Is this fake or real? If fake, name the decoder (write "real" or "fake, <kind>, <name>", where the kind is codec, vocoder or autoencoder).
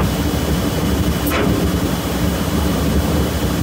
real